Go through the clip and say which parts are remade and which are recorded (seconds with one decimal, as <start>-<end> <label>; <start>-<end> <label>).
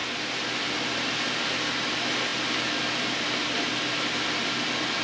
0.0-5.0 recorded